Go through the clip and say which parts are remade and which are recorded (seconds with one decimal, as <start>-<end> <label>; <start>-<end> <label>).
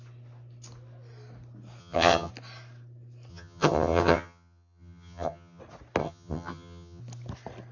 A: 0.0-1.8 recorded; 1.8-2.3 remade; 2.3-3.3 recorded; 3.3-5.6 remade; 5.6-6.0 recorded; 6.0-7.0 remade; 7.0-7.7 recorded